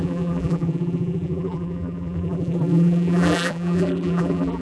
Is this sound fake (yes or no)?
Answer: yes